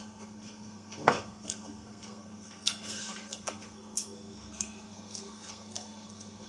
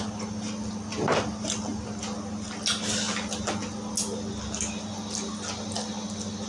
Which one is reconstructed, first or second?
first